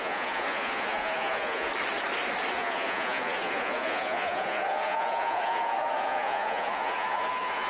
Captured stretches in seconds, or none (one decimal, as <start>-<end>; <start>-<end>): 1.7-2.5